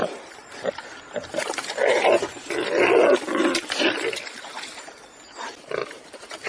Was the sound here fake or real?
real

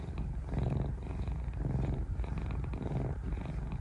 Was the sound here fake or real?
fake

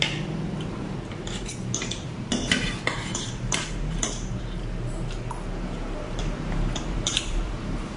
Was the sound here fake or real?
fake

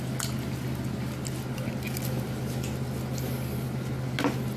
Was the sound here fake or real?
real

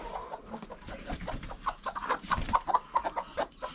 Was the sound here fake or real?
fake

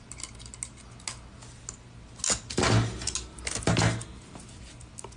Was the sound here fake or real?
real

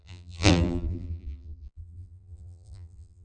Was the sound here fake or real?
fake